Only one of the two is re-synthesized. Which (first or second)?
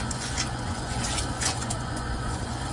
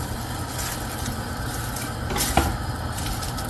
first